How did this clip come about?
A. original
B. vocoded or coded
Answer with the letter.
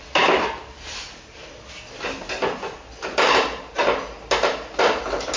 A